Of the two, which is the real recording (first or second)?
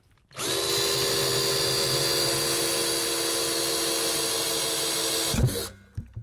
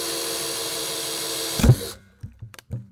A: first